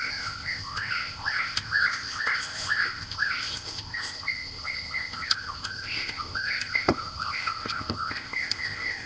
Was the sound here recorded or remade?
remade